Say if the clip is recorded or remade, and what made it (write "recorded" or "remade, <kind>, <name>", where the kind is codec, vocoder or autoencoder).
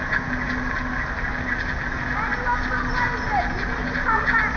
recorded